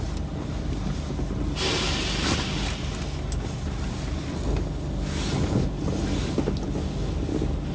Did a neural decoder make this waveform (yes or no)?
no